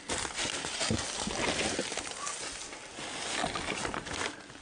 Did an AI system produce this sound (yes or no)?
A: no